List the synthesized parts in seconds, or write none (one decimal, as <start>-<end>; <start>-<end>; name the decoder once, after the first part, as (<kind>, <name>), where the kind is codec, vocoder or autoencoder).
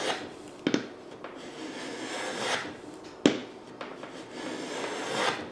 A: 3.4-4.2 (vocoder, BigVGAN v2)